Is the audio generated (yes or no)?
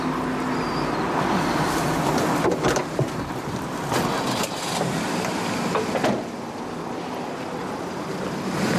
yes